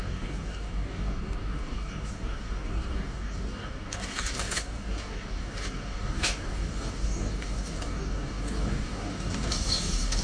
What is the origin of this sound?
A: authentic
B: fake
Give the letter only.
B